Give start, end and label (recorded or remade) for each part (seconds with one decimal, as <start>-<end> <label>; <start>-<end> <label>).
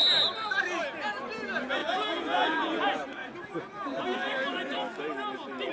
0.0-1.8 recorded; 1.8-2.8 remade; 2.8-5.7 recorded